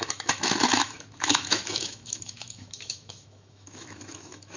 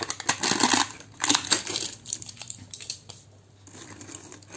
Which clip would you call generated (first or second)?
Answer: first